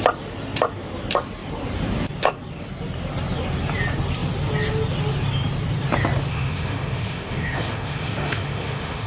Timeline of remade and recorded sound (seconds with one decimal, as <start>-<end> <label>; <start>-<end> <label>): 0.0-6.3 recorded; 6.3-9.1 remade